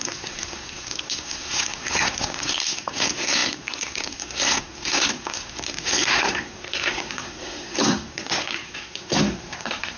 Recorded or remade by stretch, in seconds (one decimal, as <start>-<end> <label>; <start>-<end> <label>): 0.0-10.0 remade